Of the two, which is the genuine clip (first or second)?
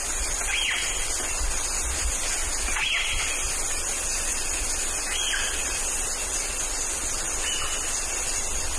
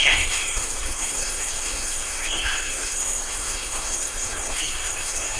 first